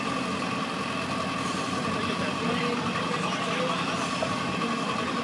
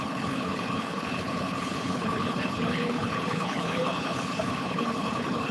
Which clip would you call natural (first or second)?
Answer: first